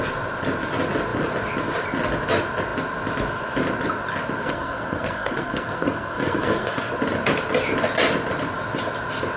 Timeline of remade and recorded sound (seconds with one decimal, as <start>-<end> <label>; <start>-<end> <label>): 0.0-4.4 recorded; 4.4-6.9 remade; 6.9-9.4 recorded